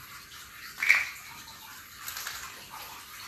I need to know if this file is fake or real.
real